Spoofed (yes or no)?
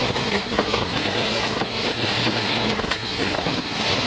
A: yes